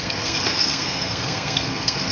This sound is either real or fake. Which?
fake